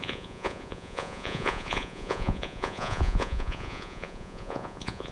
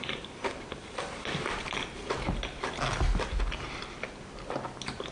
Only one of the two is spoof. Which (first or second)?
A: first